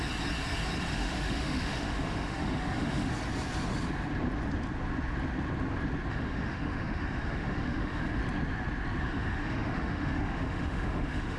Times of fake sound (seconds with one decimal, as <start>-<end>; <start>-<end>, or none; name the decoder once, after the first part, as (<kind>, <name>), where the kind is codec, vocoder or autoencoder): 0.9-3.1 (autoencoder, DAC-VAE); 6.1-8.2; 9.0-11.4